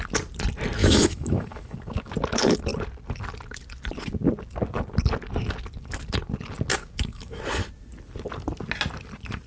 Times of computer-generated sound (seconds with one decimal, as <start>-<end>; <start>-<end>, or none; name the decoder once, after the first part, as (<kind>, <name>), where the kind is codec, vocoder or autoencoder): 0.8-2.1 (autoencoder, DAC-VAE); 6.7-7.4